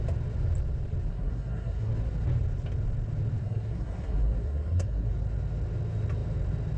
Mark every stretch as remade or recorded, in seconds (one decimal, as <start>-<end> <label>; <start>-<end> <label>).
0.0-1.1 recorded; 1.1-1.9 remade; 1.9-3.4 recorded; 3.4-5.1 remade; 5.1-6.8 recorded